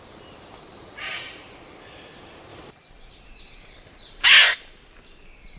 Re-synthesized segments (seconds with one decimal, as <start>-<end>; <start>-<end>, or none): 2.5-4.3